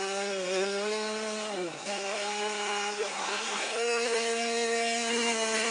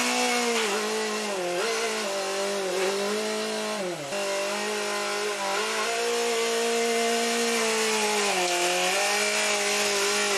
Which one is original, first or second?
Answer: second